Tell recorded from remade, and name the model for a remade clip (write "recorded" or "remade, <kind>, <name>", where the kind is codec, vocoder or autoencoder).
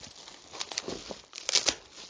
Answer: recorded